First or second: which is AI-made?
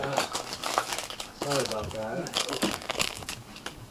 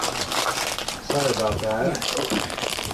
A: first